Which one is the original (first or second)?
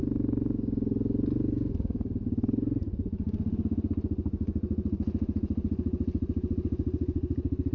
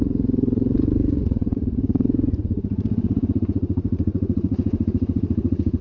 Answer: first